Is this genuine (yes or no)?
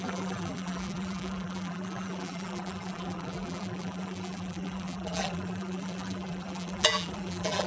no